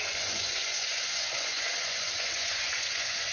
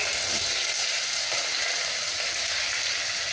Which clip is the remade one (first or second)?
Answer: first